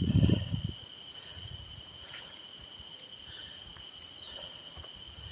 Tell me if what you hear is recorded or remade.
remade